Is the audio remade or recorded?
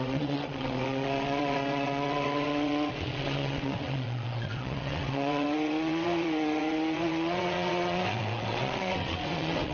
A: remade